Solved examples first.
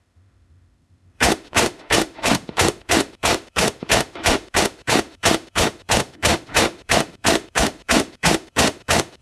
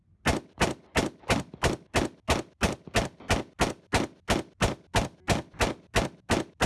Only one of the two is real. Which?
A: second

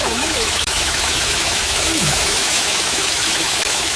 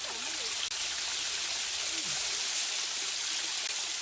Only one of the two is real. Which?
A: second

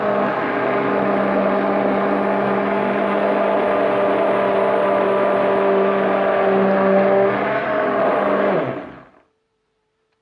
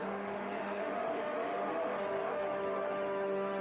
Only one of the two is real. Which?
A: first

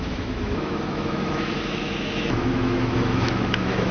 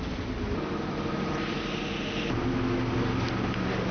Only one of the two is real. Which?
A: second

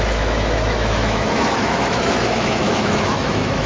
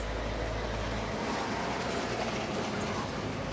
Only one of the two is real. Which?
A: second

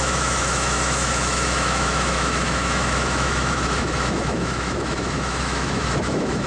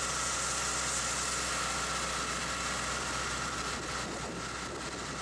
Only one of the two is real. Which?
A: second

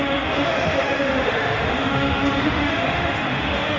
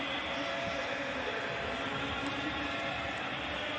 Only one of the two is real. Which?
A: second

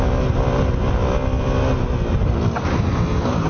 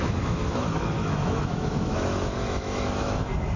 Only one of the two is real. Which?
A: first